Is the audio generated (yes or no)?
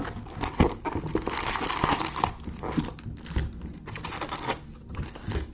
no